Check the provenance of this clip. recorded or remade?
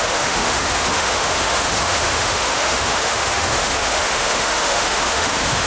remade